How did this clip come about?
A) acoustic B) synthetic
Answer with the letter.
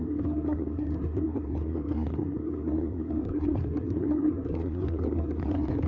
B